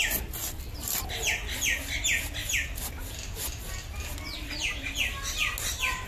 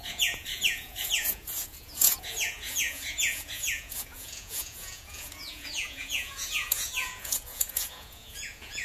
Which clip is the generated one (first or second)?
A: second